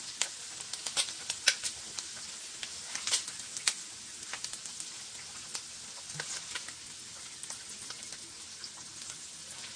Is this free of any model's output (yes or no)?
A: yes